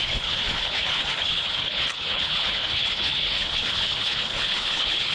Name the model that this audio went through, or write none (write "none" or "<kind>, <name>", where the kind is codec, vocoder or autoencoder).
codec, HILCodec